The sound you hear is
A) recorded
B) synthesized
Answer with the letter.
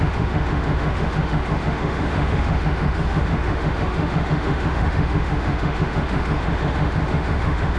B